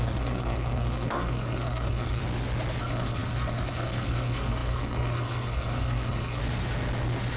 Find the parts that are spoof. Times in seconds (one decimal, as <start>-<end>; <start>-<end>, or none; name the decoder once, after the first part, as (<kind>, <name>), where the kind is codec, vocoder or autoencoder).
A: 0.0-2.2 (codec, SNAC); 2.8-6.4